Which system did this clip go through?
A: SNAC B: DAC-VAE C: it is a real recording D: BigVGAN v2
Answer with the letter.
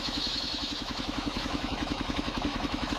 B